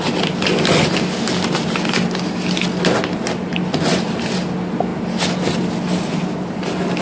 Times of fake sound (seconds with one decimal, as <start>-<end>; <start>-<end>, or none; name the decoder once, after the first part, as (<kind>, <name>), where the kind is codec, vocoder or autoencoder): none

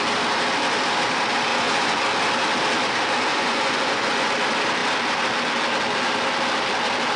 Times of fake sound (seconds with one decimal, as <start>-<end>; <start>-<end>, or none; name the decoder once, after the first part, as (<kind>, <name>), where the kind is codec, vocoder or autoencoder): 1.5-2.0 (vocoder, Vocos); 3.3-4.3

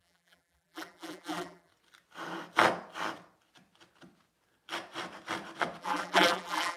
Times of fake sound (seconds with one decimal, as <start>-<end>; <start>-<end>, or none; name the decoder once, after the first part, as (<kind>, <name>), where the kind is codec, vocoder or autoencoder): 0.0-1.7 (vocoder, BigVGAN v2); 5.8-6.8